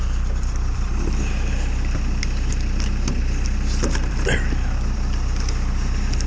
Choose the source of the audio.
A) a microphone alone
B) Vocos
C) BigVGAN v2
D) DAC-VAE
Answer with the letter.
C